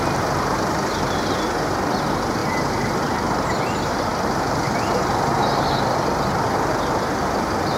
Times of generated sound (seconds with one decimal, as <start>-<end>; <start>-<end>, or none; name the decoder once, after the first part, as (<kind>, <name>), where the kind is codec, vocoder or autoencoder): none